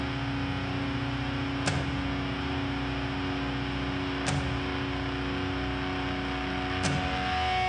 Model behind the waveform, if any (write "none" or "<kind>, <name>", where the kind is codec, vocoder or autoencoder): none